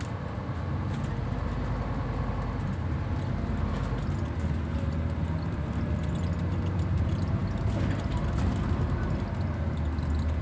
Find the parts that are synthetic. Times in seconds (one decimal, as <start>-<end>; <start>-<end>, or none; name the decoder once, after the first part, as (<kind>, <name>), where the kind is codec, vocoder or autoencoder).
none